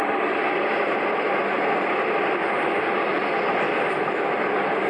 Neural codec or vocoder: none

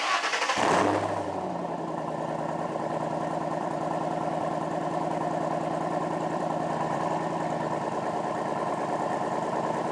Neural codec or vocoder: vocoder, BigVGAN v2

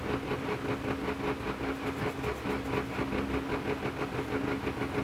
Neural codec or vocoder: none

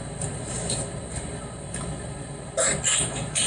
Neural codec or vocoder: none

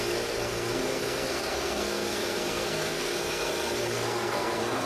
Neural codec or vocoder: codec, SNAC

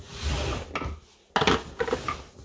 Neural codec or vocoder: none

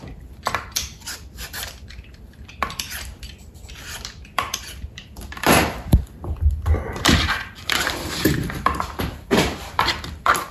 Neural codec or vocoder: vocoder, BigVGAN v2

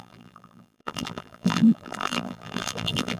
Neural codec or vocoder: vocoder, BigVGAN v2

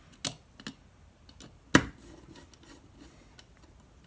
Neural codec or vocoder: none